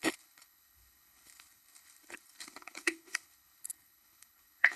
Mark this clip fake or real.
fake